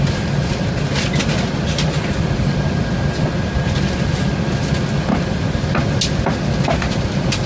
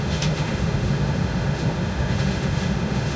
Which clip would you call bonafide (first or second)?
first